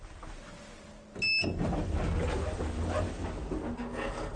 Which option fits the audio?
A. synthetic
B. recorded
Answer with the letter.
B